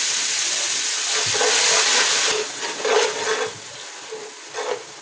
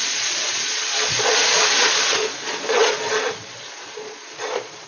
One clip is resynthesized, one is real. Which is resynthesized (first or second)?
second